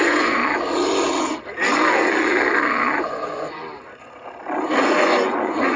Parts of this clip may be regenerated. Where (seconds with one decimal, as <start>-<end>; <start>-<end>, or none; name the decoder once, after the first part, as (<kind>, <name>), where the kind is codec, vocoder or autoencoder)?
0.0-0.4 (vocoder, Vocos); 3.1-3.6; 4.8-5.8